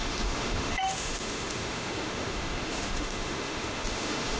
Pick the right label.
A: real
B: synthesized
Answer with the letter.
B